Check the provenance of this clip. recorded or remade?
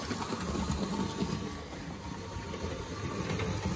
recorded